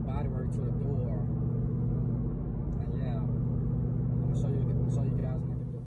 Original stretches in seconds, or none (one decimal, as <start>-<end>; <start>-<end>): 0.0-5.9